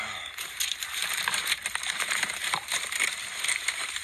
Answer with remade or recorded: recorded